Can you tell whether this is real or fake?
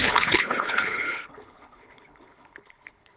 fake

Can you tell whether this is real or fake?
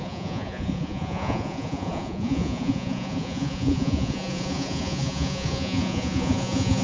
fake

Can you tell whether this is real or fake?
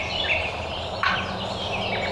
real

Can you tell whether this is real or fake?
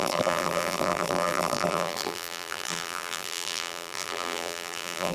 fake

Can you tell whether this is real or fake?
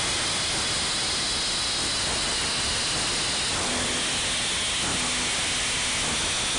real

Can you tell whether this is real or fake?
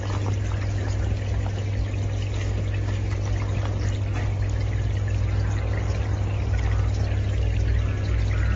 real